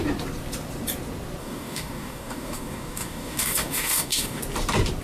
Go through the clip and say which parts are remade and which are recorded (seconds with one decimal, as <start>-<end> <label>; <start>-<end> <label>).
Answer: 0.0-1.4 recorded; 1.4-4.4 remade; 4.4-5.0 recorded